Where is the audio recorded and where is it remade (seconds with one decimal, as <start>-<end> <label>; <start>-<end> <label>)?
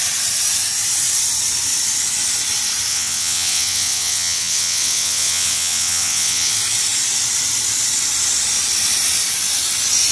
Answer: 0.0-2.9 recorded; 2.9-6.5 remade; 6.5-10.1 recorded